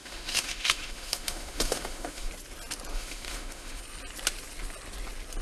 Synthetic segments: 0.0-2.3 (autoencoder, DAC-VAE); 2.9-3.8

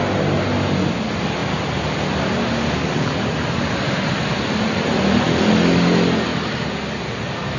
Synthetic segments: none